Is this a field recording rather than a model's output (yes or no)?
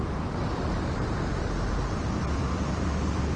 yes